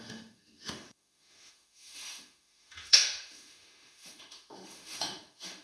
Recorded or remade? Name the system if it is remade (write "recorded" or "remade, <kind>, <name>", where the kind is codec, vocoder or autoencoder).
remade, autoencoder, DAC-VAE